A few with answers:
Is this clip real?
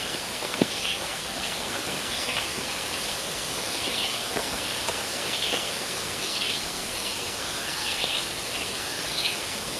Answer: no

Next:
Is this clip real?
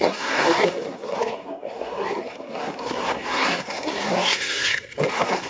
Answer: no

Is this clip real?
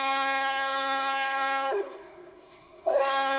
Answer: no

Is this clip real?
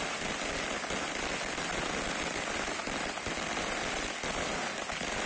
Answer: yes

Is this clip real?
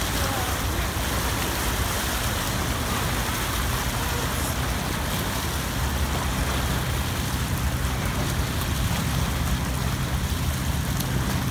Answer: yes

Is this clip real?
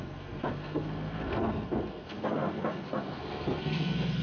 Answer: no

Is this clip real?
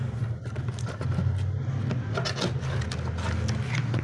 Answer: yes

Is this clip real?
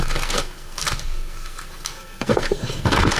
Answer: no